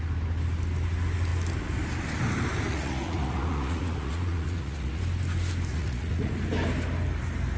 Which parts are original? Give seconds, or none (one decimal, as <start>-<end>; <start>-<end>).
0.0-2.7; 5.0-5.7; 6.3-7.6